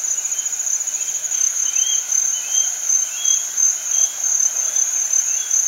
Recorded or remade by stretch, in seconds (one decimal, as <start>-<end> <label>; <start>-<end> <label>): 0.0-1.2 recorded; 1.2-1.7 remade; 1.7-5.7 recorded